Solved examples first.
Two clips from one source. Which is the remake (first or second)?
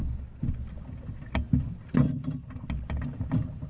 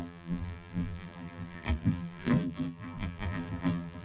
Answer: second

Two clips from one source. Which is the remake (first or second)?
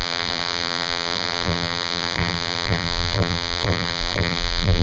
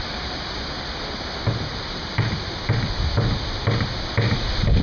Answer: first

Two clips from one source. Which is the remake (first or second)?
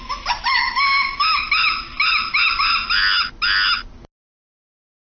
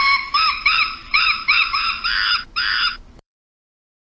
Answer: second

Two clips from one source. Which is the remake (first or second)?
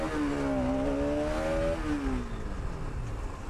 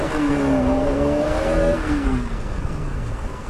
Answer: second